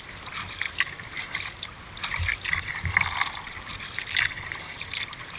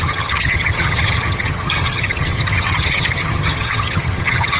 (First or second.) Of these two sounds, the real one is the first